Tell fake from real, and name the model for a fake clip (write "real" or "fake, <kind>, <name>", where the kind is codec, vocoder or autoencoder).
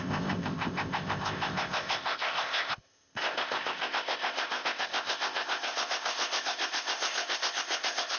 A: fake, codec, ZipCodec